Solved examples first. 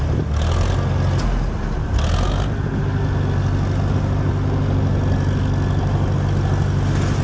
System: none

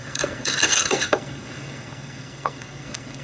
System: codec, SNAC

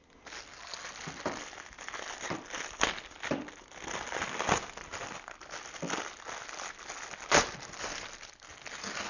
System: none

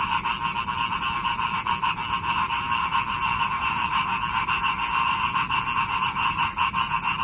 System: none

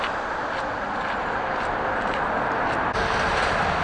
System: none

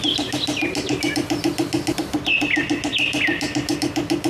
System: none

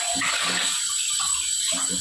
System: none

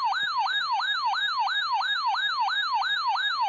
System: none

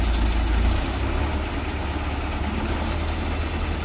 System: none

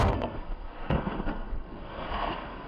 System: codec, SNAC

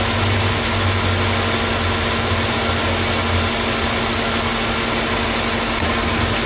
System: none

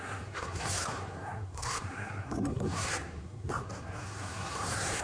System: codec, SNAC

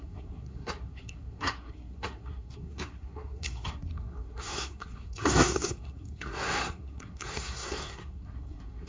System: codec, SNAC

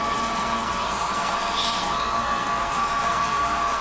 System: codec, SNAC